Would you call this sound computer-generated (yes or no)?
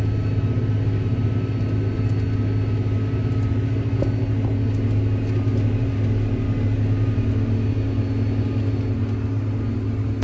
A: no